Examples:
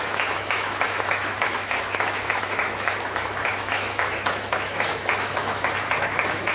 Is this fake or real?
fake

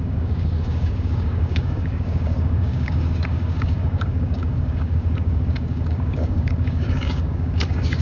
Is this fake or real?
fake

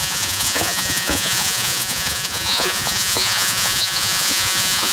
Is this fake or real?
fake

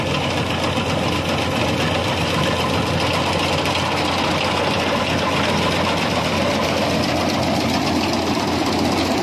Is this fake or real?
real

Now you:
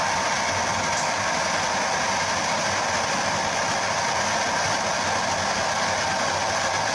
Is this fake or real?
real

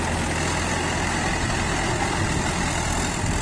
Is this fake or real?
real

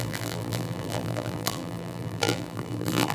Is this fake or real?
fake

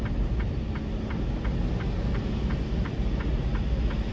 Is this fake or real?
real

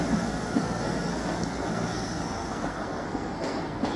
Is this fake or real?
fake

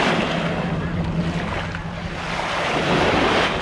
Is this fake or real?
real